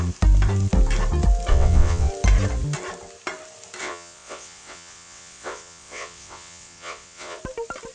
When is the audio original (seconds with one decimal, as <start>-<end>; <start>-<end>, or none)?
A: 0.0-1.5; 2.1-3.8; 7.4-7.9